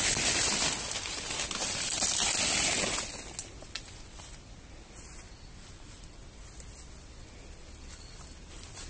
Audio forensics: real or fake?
real